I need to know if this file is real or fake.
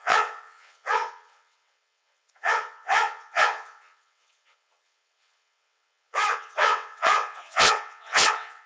fake